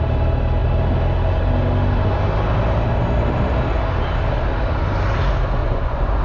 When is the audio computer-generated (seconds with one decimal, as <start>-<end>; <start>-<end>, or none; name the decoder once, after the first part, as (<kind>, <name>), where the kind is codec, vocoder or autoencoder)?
5.6-6.2 (vocoder, Vocos)